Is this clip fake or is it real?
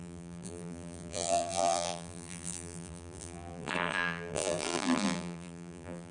fake